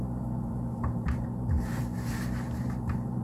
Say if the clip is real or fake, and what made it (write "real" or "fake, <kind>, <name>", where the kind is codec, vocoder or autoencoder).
fake, vocoder, BigVGAN v2